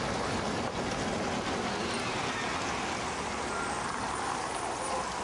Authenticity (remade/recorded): recorded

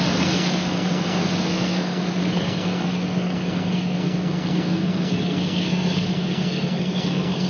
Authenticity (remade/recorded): remade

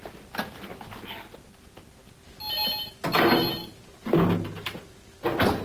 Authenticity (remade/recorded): recorded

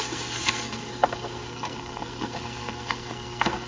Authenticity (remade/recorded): remade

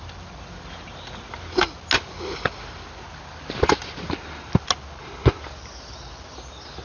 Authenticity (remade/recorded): recorded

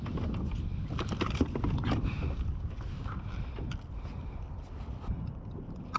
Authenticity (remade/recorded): recorded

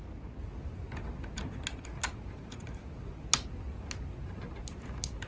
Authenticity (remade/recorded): recorded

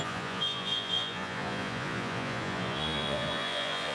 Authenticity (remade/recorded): remade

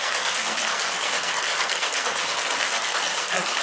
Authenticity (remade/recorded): remade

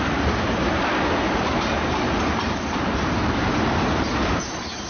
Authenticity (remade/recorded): remade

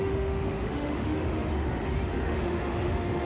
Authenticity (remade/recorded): remade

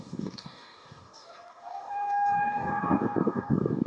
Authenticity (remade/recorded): remade